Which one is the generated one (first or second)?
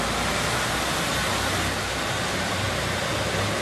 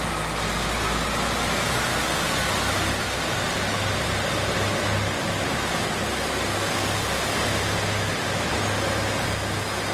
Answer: first